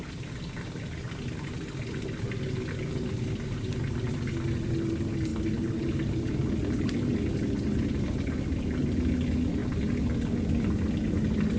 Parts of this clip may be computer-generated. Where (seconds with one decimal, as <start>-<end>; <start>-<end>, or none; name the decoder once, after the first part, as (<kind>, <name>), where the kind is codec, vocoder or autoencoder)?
none